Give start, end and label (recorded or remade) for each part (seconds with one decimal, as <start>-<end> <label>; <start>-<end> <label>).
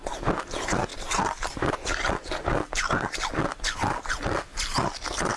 0.0-0.9 recorded; 0.9-2.1 remade; 2.1-5.4 recorded